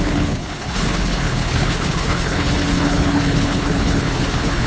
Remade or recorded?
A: remade